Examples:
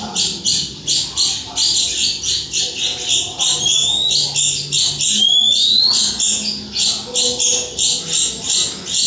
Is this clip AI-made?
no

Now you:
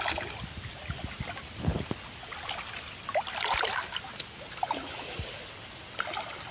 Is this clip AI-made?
no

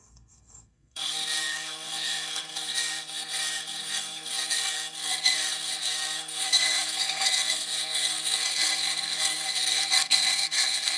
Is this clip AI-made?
yes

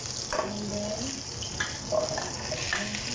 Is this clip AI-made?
no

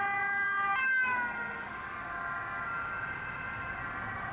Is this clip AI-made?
no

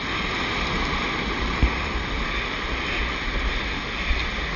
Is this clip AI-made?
no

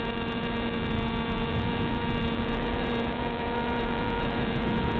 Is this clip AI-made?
yes